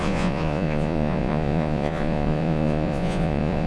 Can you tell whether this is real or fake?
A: fake